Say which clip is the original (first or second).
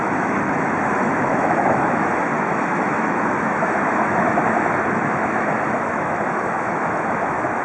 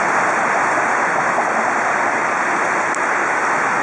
second